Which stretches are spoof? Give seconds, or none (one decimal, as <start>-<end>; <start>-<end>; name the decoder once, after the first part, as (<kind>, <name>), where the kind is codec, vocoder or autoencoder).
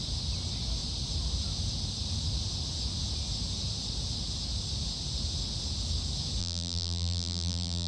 6.4-7.9 (vocoder, BigVGAN v2)